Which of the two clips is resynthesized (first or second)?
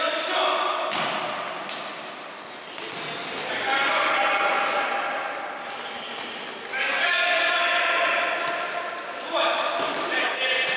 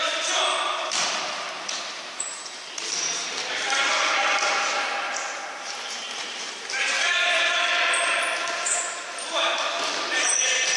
second